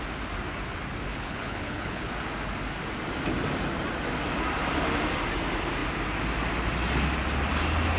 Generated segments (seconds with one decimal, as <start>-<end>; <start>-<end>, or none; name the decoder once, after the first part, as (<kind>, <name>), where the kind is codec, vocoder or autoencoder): 1.1-2.1 (codec, HILCodec)